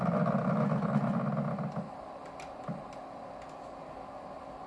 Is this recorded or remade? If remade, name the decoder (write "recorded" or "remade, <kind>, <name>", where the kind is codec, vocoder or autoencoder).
remade, vocoder, BigVGAN v2